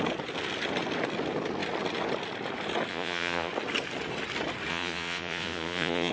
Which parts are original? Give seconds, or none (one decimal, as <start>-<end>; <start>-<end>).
0.0-2.9; 3.5-4.7